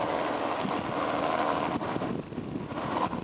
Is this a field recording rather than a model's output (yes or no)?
yes